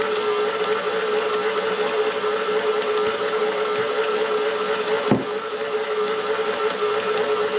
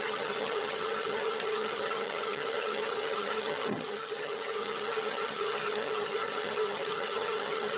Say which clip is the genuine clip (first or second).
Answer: first